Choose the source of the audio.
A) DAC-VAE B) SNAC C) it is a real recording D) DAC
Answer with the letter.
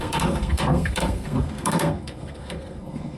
B